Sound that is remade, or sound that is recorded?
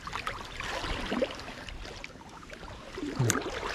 recorded